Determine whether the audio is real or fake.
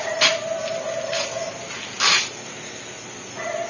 real